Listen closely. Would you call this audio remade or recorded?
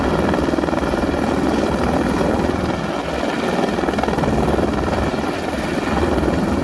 recorded